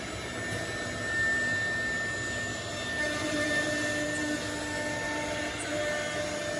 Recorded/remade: recorded